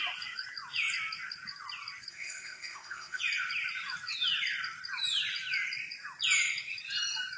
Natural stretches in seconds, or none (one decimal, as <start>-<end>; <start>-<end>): 0.0-2.1; 3.2-7.4